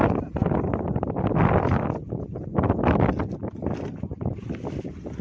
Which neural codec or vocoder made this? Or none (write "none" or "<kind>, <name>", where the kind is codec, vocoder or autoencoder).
none